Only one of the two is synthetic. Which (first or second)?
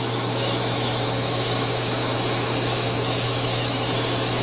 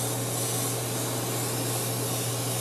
first